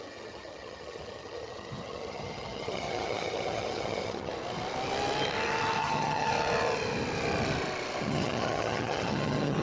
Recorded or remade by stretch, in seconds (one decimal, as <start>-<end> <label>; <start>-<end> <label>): 0.0-4.3 remade; 4.3-5.8 recorded; 5.8-6.3 remade; 6.3-8.0 recorded; 8.0-9.6 remade